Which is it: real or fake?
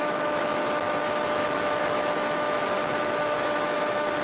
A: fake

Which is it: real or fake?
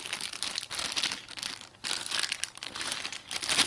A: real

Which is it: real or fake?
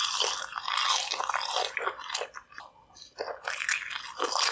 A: real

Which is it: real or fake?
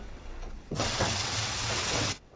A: fake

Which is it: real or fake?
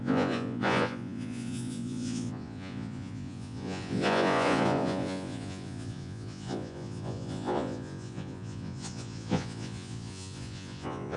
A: fake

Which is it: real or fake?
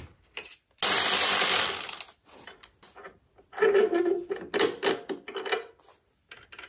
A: real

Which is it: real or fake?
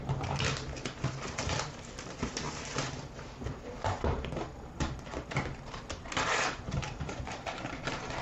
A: fake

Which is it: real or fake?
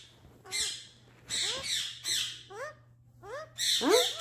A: real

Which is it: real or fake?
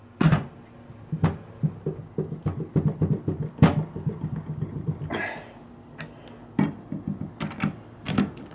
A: real